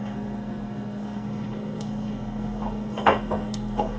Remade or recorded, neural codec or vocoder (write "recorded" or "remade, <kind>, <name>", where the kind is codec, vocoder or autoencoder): remade, codec, SNAC